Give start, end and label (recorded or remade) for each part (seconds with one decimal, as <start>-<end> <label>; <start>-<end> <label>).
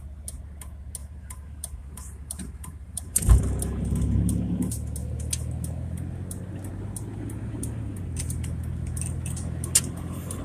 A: 0.0-1.0 recorded; 1.0-3.4 remade; 3.4-10.4 recorded